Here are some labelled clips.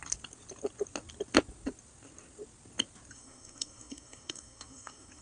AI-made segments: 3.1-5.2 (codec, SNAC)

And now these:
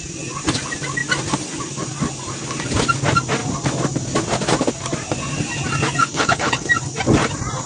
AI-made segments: 6.0-6.7 (codec, HILCodec)